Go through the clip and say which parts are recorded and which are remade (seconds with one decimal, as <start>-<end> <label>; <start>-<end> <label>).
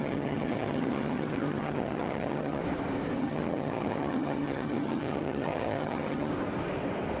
0.0-2.6 remade; 2.6-3.2 recorded; 3.2-6.3 remade; 6.3-7.2 recorded